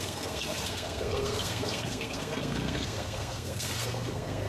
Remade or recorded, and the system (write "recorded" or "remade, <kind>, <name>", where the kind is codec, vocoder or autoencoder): remade, codec, SNAC